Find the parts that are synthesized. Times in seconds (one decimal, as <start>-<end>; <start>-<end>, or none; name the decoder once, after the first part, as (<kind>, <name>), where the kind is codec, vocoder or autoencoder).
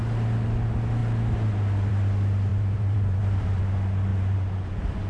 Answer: 2.5-3.6 (vocoder, BigVGAN v2); 4.1-5.1